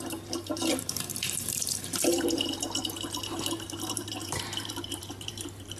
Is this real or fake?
fake